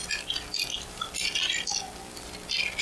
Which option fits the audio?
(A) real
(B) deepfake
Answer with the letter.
A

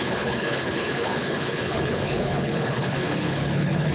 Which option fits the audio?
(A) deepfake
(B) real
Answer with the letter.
A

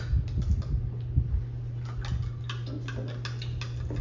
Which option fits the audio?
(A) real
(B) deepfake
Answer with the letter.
A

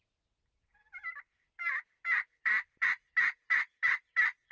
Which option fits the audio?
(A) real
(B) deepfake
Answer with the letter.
B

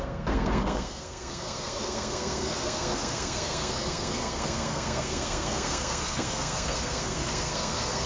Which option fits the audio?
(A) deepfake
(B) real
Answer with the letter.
A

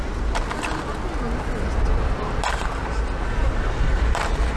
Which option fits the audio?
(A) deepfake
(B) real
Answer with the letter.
B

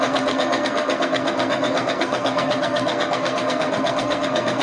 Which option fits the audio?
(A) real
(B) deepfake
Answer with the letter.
B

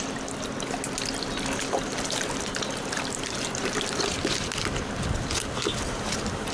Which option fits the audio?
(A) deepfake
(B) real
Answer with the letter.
B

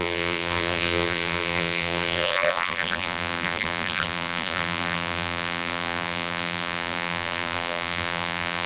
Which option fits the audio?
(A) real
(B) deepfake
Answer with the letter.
B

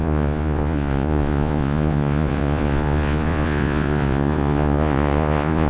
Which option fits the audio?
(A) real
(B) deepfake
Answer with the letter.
B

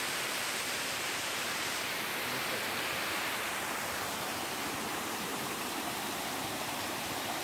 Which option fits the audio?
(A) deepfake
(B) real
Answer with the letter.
A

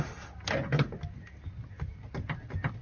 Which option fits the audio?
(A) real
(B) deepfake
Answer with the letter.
A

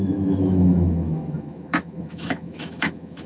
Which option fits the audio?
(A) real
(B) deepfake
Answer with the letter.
B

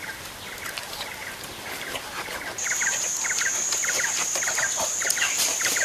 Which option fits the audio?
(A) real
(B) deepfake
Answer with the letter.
A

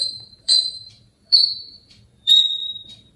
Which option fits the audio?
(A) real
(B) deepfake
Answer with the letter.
B